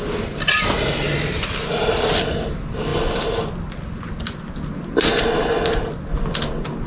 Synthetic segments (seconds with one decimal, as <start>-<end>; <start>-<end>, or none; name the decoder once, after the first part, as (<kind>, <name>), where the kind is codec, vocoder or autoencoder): none